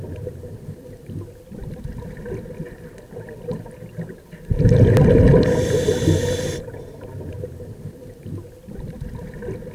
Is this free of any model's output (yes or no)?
yes